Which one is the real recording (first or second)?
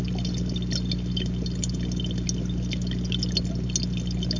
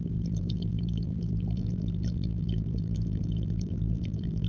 first